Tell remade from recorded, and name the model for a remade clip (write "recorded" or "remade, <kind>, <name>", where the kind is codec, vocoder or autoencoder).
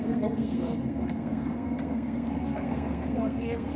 remade, codec, SNAC